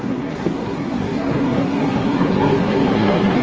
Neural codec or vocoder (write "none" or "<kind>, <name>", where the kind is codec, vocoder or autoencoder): codec, SNAC